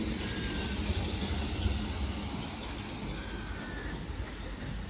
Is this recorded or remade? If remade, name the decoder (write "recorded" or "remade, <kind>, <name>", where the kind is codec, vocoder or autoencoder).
recorded